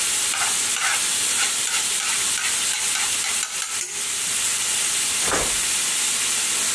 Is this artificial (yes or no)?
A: no